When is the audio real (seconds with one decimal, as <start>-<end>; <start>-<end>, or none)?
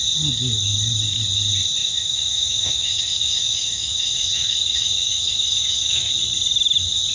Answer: 0.0-1.8; 6.1-7.1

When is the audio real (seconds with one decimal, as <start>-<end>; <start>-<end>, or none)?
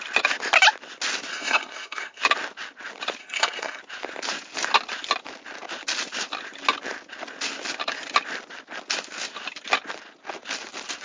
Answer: 0.0-1.3; 2.2-3.2; 3.8-11.0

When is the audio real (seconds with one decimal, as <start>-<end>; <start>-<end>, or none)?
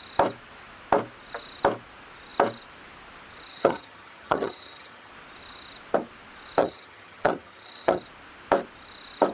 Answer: 0.0-3.5; 5.1-6.6; 8.0-9.3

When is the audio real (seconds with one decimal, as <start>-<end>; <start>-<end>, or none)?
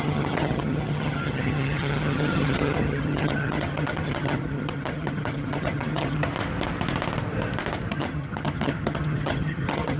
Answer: 6.3-7.9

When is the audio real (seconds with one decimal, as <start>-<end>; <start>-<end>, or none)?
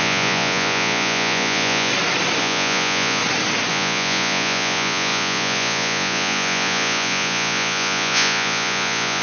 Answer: 1.9-2.4; 3.2-3.7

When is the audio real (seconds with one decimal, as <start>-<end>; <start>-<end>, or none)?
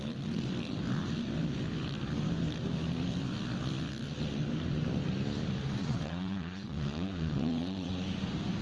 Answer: 0.0-5.8; 7.9-8.6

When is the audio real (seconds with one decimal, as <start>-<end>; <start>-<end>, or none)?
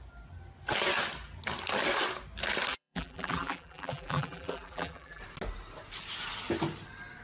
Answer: 0.0-2.7; 5.2-7.2